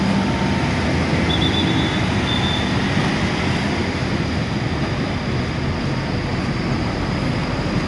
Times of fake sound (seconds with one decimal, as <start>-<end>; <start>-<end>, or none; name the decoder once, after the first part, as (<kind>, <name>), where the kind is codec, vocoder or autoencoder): none